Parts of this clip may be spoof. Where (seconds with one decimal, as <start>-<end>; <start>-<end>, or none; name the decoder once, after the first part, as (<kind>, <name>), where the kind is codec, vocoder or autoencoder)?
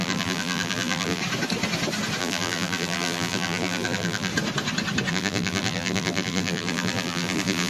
0.0-1.2 (vocoder, BigVGAN v2); 2.2-4.3; 5.1-7.7